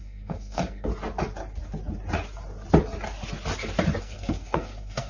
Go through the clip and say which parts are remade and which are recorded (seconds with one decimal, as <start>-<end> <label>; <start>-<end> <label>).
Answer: 0.0-0.9 remade; 0.9-4.0 recorded; 4.0-5.1 remade